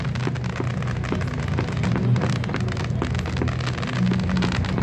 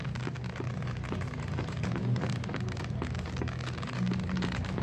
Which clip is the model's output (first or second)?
second